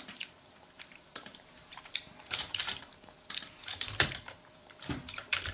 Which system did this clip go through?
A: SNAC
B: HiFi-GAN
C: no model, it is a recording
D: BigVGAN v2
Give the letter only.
D